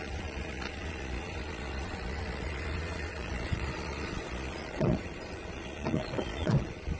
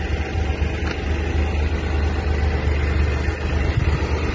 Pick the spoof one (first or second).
first